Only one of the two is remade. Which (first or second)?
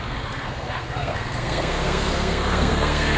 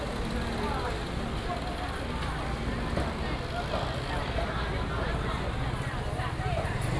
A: first